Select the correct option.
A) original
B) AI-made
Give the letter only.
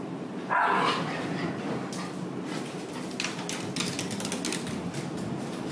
A